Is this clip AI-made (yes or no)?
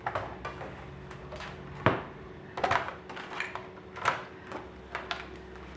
no